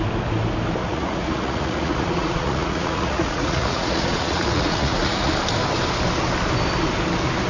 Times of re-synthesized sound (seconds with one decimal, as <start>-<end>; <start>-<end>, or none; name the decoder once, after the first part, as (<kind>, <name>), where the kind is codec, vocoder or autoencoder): 0.8-5.3 (vocoder, Vocos)